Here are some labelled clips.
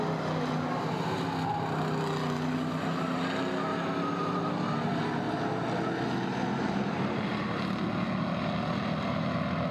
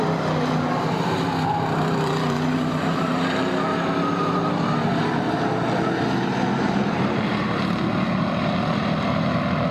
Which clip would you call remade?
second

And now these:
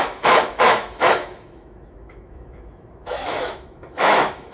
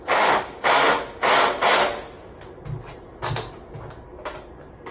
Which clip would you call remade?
first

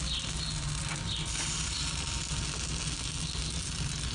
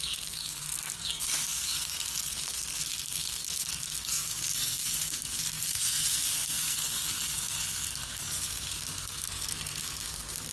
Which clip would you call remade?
second